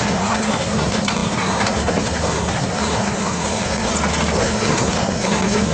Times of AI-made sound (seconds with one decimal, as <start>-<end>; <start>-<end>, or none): 0.0-3.9; 4.4-5.7